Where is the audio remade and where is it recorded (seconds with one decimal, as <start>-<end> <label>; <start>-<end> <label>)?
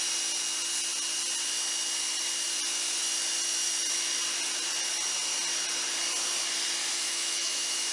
0.0-6.8 recorded; 6.8-7.9 remade